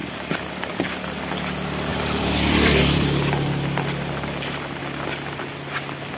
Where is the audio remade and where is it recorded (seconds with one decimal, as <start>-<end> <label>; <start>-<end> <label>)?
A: 0.0-1.2 remade; 1.2-1.9 recorded; 1.9-4.8 remade; 4.8-6.2 recorded